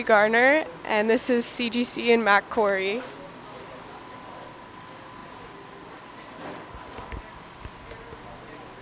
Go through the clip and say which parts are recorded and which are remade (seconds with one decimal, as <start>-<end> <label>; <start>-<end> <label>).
0.0-8.8 recorded